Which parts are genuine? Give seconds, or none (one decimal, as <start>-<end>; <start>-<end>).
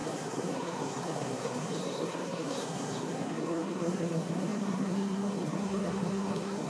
none